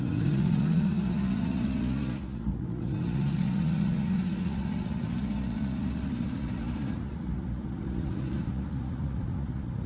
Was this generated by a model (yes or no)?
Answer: yes